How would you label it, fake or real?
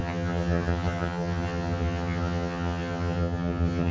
fake